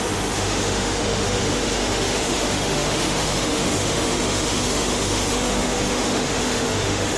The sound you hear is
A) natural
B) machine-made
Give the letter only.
B